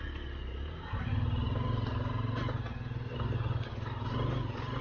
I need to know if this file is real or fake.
real